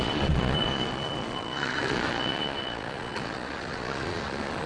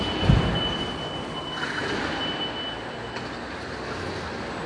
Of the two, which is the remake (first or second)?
first